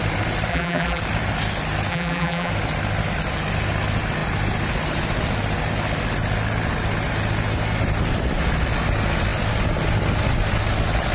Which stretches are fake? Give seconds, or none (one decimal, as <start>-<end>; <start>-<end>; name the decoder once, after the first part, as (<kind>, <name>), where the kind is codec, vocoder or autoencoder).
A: 0.5-1.0 (vocoder, BigVGAN v2); 1.9-2.5